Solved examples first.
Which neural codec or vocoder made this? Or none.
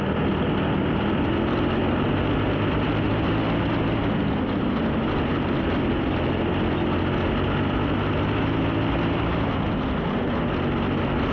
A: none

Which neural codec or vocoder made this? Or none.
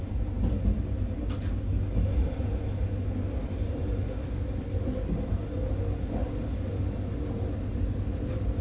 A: none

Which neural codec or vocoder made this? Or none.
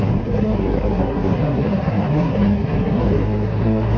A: codec, SNAC